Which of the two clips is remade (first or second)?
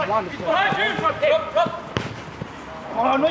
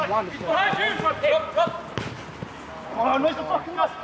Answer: first